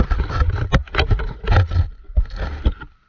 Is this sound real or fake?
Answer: real